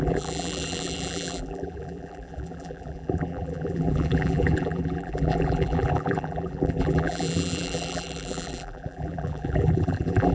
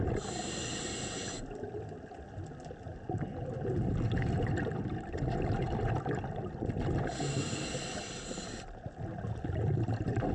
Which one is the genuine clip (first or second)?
second